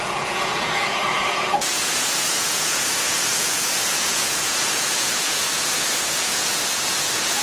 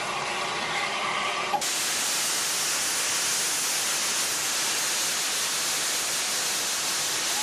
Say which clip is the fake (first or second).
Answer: first